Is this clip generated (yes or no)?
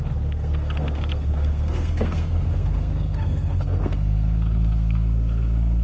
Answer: yes